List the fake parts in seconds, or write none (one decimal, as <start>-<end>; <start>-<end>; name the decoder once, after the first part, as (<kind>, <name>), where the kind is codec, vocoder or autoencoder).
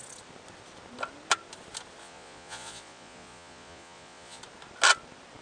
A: 2.0-4.4 (vocoder, Vocos)